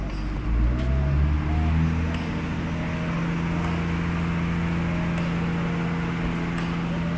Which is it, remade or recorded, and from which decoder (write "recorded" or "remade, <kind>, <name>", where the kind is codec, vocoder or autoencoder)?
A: recorded